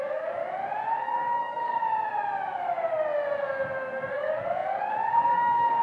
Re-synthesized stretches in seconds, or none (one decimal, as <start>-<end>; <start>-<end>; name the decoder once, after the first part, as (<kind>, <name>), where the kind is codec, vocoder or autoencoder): 0.0-0.4 (codec, DAC); 0.9-1.7; 4.1-5.8